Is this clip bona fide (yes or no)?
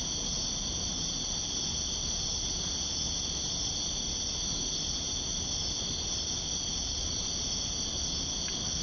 yes